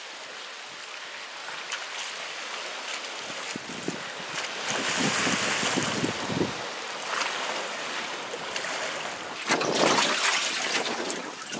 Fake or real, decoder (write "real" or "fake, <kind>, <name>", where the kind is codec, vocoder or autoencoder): real